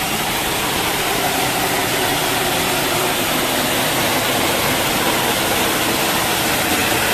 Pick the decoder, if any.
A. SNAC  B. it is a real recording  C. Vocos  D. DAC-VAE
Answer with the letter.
B